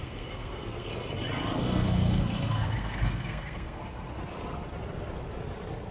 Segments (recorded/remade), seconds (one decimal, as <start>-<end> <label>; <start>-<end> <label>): 0.0-0.9 remade; 0.9-1.6 recorded; 1.6-3.8 remade; 3.8-5.9 recorded